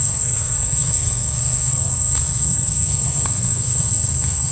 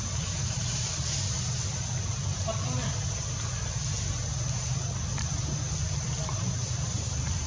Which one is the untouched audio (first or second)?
second